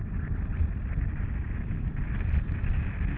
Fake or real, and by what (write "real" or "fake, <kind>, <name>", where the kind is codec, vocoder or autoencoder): real